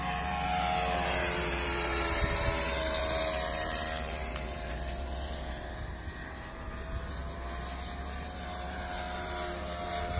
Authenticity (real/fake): fake